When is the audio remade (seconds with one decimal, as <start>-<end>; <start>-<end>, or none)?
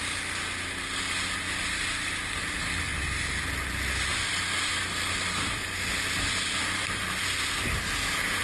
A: none